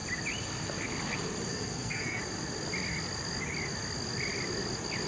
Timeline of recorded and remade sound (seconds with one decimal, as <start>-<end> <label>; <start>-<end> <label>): 0.0-1.5 recorded; 1.5-2.2 remade; 2.2-5.1 recorded